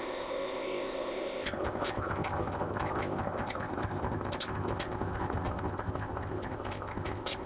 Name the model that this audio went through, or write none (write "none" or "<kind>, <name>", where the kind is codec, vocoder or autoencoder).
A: codec, ZipCodec